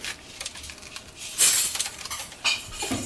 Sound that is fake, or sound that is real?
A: fake